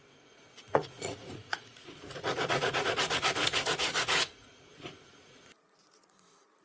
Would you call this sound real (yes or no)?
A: no